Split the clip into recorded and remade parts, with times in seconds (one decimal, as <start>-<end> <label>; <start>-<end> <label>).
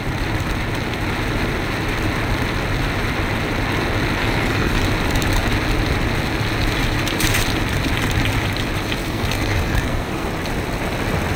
0.0-4.2 recorded; 4.2-4.8 remade; 4.8-9.0 recorded; 9.0-10.3 remade; 10.3-11.4 recorded